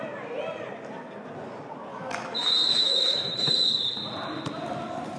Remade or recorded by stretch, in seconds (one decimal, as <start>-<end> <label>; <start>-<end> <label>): 0.0-1.9 recorded; 1.9-3.7 remade; 3.7-5.2 recorded